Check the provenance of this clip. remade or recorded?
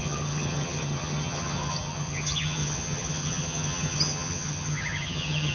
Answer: remade